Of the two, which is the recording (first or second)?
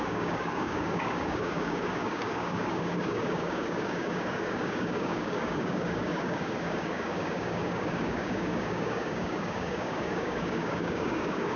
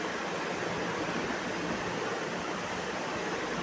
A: second